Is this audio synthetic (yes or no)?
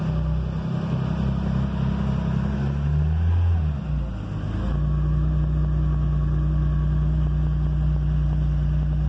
no